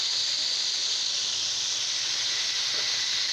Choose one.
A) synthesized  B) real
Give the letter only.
B